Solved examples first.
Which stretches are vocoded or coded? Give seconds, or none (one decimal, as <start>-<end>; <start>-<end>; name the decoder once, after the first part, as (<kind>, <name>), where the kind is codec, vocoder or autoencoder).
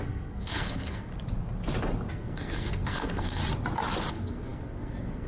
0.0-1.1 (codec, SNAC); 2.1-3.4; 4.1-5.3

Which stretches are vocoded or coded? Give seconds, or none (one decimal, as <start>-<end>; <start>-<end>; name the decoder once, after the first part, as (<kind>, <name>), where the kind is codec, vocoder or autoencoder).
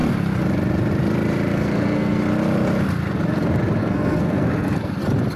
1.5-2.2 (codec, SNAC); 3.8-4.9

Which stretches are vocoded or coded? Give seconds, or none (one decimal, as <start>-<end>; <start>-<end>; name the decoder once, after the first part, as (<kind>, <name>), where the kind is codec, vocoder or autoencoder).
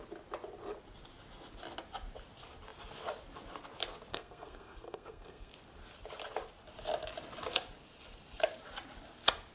4.1-5.5 (codec, SNAC)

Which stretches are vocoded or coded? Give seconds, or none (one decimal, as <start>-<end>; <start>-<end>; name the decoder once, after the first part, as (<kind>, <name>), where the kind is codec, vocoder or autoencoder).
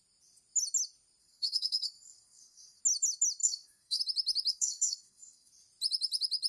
1.2-2.8 (codec, SNAC); 3.4-4.0; 4.5-5.5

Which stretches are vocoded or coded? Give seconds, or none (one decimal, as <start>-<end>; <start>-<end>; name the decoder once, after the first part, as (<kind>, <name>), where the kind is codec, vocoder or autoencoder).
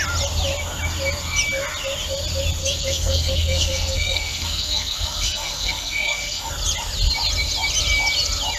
2.6-6.5 (codec, SNAC)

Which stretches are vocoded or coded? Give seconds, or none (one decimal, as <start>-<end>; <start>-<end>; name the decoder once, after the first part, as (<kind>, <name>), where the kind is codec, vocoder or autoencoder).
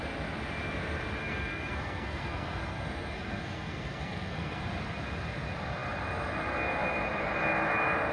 1.2-4.7 (codec, SNAC)